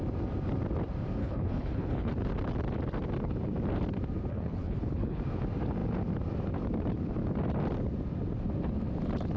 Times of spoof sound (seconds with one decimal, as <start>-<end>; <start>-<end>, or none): 1.2-2.1; 4.3-5.2